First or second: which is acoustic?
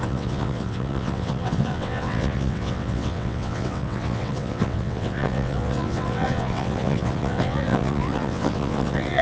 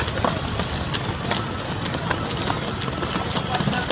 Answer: second